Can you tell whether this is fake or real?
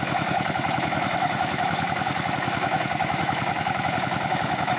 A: fake